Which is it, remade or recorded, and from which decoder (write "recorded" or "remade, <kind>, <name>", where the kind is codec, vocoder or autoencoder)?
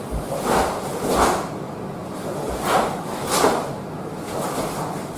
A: recorded